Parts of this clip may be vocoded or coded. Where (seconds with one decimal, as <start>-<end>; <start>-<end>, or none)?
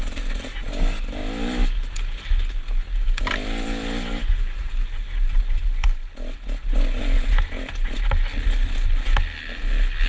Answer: none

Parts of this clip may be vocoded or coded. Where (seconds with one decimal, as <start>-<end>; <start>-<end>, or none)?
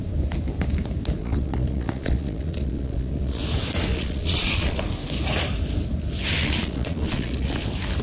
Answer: 1.2-3.4; 3.9-4.8; 6.4-7.6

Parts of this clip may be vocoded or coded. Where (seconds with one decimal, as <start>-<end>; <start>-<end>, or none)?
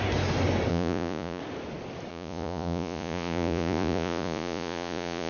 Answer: 0.7-1.4; 2.1-5.3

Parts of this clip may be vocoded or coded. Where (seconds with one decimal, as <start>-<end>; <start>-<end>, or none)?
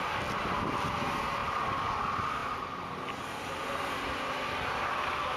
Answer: none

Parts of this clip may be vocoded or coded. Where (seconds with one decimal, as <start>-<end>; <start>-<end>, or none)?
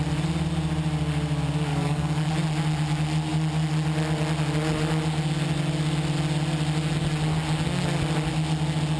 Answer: 1.7-2.3